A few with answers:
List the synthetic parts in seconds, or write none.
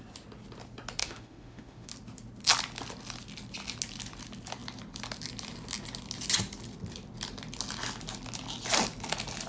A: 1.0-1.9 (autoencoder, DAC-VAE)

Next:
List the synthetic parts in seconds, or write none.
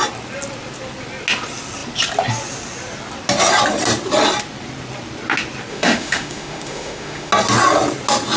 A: 5.7-7.3 (autoencoder, DAC-VAE)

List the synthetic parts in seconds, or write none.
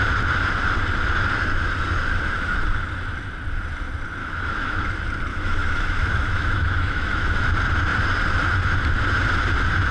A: 4.2-4.8 (autoencoder, DAC-VAE); 5.3-7.5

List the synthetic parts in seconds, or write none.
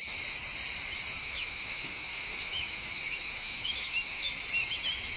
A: 1.2-4.3 (autoencoder, DAC-VAE)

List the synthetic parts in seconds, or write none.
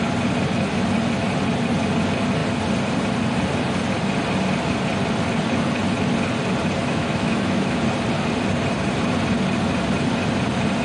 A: 6.8-7.8 (autoencoder, DAC-VAE)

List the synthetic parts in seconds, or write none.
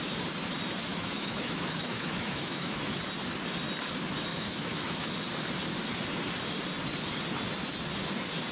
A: 0.9-3.0 (autoencoder, DAC-VAE); 4.3-5.1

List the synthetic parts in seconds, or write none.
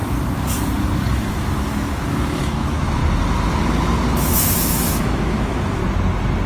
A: 1.1-3.0 (autoencoder, DAC-VAE); 4.2-5.8